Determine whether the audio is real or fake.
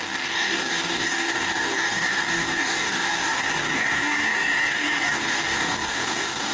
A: fake